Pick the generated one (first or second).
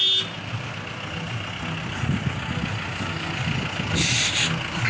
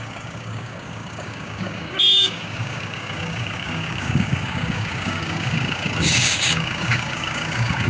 second